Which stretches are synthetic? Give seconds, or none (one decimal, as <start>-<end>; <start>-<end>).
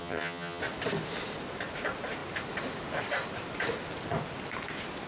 0.0-0.6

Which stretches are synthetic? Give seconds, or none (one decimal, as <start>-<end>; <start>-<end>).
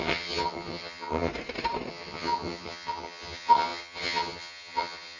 0.0-1.3; 1.9-5.2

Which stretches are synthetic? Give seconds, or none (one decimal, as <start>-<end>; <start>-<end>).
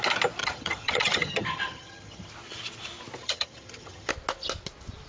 0.4-2.3; 3.2-4.1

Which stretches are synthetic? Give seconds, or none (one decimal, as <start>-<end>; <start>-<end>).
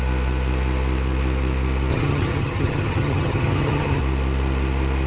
1.9-4.0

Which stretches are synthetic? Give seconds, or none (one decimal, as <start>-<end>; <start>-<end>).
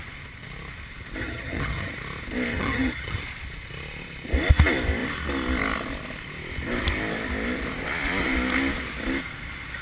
1.2-1.9; 2.5-3.2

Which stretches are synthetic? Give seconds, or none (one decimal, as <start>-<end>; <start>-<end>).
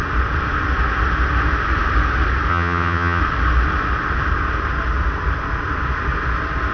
2.5-3.2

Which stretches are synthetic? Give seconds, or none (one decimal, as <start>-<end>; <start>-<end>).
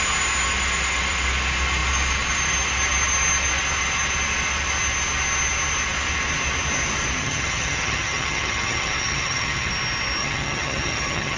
7.2-9.7; 10.2-11.4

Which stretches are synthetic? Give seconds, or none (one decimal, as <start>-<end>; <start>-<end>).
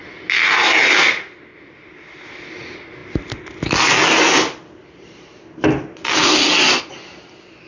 none